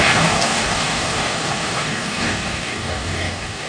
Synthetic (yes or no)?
yes